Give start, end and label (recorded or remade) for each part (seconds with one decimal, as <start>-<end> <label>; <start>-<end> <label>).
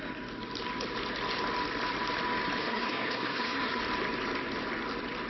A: 0.0-2.6 recorded; 2.6-3.8 remade; 3.8-5.3 recorded